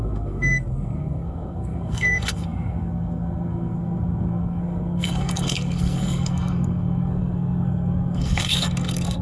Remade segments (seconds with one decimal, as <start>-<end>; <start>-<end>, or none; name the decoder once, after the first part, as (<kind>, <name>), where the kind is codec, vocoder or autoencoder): 0.0-9.2 (codec, SNAC)